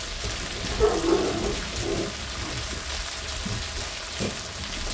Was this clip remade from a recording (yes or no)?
no